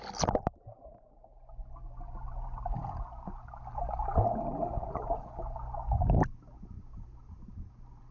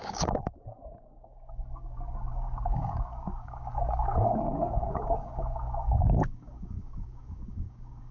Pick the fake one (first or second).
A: second